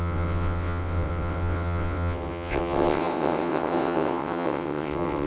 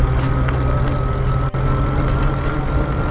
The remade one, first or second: first